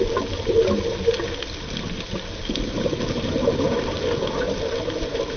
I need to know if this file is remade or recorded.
recorded